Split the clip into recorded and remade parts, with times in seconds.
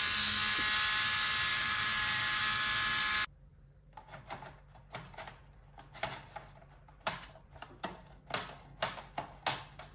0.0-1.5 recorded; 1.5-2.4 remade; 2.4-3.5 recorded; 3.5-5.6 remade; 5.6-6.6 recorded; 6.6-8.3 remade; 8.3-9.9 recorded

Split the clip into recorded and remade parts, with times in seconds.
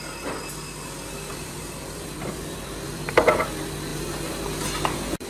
0.0-1.3 recorded; 1.3-3.0 remade; 3.0-3.9 recorded; 3.9-4.6 remade; 4.6-5.3 recorded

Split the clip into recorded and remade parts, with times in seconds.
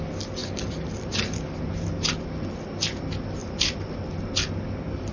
0.0-0.4 recorded; 0.4-2.6 remade; 2.6-3.4 recorded; 3.4-4.1 remade; 4.1-5.1 recorded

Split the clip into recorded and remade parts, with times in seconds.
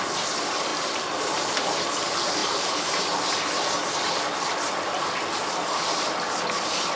0.0-2.4 recorded; 2.4-3.0 remade; 3.0-7.0 recorded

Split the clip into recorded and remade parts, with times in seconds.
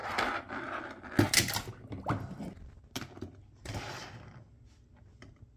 0.0-5.6 recorded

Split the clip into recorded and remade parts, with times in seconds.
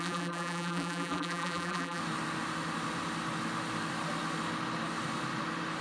0.0-2.0 remade; 2.0-5.8 recorded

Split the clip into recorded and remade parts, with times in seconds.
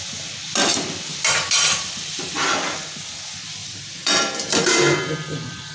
0.0-1.1 recorded; 1.1-2.3 remade; 2.3-3.6 recorded; 3.6-5.7 remade